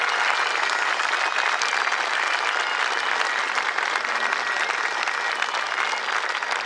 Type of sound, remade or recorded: recorded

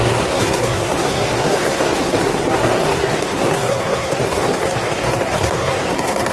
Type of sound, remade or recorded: remade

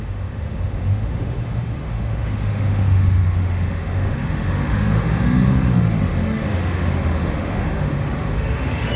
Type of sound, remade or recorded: remade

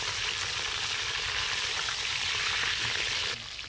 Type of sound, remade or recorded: recorded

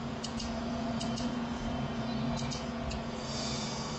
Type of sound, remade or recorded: remade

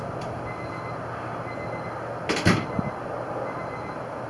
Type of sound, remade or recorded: recorded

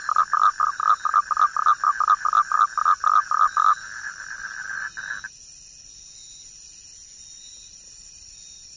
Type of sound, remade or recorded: recorded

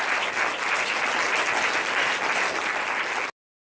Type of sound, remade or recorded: recorded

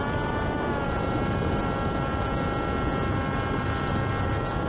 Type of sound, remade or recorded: recorded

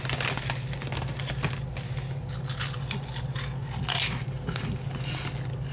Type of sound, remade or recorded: recorded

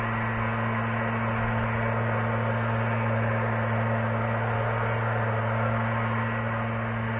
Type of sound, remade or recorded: recorded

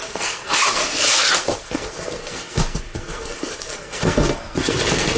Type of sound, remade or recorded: remade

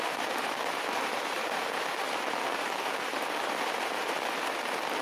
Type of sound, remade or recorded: remade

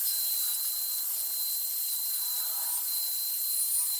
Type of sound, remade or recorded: recorded